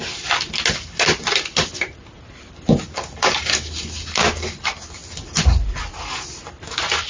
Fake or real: real